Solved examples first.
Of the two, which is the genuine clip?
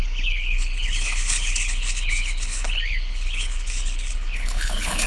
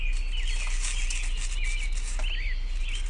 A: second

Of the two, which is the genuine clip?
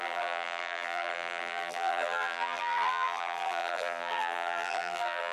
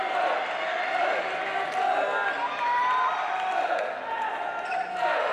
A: second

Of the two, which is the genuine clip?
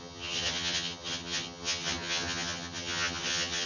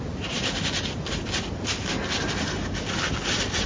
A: second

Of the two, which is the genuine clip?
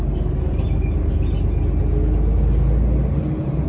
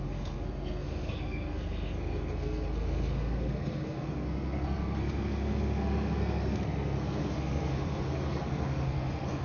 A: first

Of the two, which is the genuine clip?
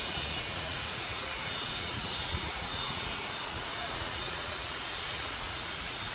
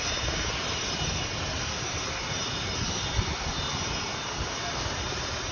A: second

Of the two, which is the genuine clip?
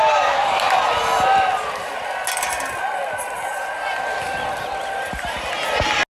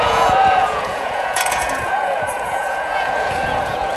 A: first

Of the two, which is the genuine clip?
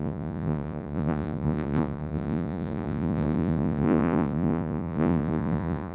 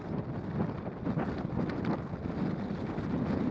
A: second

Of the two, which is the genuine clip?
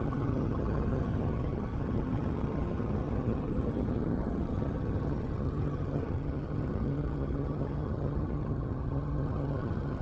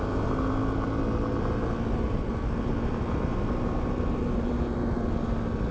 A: second